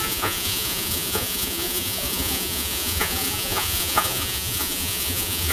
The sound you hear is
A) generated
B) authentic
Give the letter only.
A